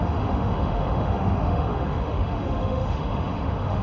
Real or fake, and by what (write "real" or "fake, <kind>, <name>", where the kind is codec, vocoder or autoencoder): fake, autoencoder, DAC-VAE